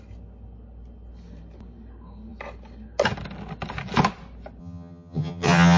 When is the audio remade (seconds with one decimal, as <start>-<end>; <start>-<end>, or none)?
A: 4.6-5.8